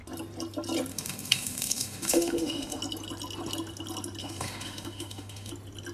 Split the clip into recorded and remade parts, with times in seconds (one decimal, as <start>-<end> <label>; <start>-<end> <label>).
0.0-0.9 recorded; 0.9-2.8 remade; 2.8-4.2 recorded; 4.2-5.5 remade; 5.5-5.9 recorded